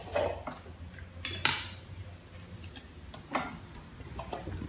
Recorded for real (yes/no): yes